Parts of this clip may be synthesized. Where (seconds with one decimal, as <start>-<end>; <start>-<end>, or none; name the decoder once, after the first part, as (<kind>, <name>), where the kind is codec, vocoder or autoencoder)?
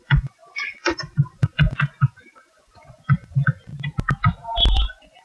0.0-3.7 (vocoder, Vocos); 4.7-5.2